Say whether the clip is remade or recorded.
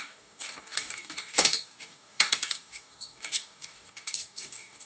remade